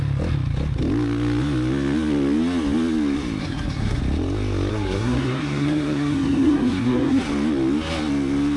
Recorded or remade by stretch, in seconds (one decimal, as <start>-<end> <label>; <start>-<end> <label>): 0.0-3.4 recorded; 3.4-4.0 remade; 4.0-4.7 recorded; 4.7-7.2 remade; 7.2-8.6 recorded